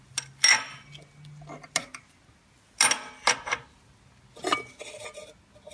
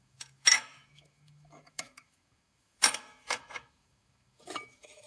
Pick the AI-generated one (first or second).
second